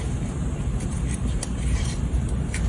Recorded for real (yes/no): no